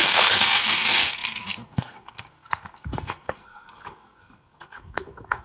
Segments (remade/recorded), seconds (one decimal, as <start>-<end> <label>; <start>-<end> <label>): 0.0-5.4 remade